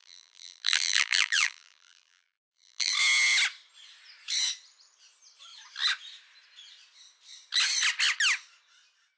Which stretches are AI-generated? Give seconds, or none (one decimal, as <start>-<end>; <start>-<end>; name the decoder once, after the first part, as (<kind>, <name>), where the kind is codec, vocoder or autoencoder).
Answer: 0.0-2.9 (vocoder, BigVGAN v2)